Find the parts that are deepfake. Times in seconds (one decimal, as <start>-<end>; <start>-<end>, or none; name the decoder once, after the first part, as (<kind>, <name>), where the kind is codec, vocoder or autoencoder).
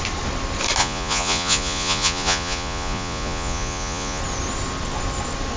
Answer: 0.8-4.2 (vocoder, Vocos)